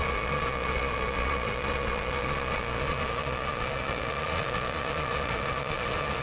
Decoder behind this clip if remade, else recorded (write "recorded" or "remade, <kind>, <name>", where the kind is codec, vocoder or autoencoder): remade, vocoder, Vocos